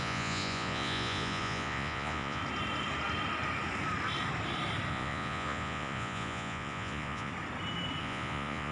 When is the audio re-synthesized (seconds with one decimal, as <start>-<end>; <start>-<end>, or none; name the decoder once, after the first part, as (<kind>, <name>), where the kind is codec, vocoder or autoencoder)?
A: 0.0-2.4 (vocoder, Vocos); 4.9-7.3; 8.0-8.7